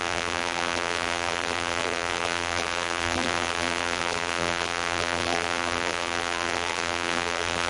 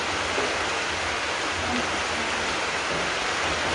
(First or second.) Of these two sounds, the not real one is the first